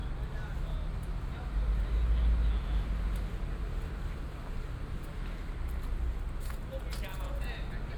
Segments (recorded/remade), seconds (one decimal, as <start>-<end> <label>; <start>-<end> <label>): 0.0-8.0 recorded